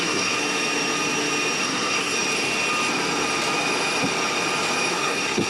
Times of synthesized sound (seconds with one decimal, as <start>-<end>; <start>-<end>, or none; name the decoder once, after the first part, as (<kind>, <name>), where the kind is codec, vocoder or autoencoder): 0.0-0.4 (codec, SNAC); 1.6-2.1; 4.9-5.5